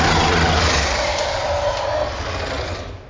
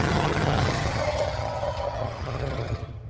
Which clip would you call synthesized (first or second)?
second